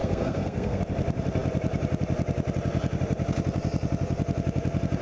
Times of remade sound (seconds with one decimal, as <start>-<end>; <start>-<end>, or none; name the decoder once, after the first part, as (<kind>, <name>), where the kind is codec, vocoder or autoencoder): 0.0-0.8 (codec, SNAC)

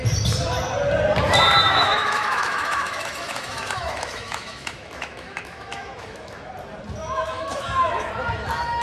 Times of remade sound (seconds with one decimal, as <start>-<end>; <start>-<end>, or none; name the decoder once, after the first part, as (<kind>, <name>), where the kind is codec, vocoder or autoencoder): 1.6-6.5 (autoencoder, DAC-VAE); 7.0-8.1

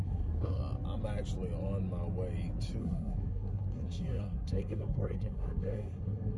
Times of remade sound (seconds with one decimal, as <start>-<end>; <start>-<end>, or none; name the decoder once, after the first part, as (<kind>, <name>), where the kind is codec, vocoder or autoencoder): 0.0-0.6 (codec, SNAC); 2.8-6.4

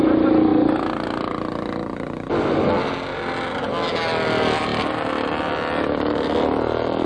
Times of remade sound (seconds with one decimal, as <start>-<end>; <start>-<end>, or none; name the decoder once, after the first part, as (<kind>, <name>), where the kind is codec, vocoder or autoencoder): none

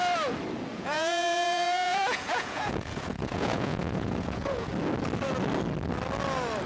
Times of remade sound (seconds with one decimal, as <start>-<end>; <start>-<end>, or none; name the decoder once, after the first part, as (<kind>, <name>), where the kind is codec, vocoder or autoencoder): 0.7-4.7 (vocoder, Vocos)

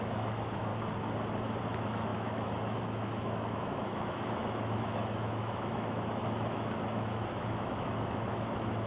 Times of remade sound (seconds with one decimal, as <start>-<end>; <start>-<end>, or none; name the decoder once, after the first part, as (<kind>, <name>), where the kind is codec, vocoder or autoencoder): 0.0-0.7 (autoencoder, DAC-VAE); 1.6-8.9

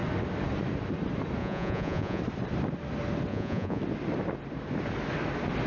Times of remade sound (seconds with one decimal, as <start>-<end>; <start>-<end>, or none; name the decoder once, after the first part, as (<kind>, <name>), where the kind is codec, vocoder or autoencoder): 1.4-2.2 (vocoder, Vocos); 3.3-3.8

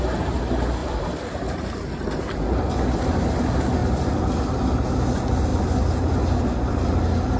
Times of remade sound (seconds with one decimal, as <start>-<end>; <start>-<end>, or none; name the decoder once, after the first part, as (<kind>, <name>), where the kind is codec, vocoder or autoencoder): 0.8-3.3 (vocoder, BigVGAN v2); 3.8-4.4